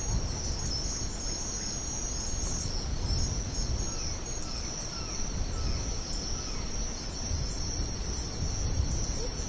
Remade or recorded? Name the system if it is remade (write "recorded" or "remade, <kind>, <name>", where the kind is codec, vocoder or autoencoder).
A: recorded